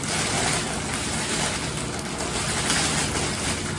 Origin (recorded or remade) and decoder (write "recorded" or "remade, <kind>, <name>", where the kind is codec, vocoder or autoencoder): recorded